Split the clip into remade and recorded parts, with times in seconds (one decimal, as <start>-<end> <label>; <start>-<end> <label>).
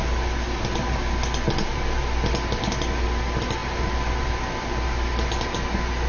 0.0-6.1 recorded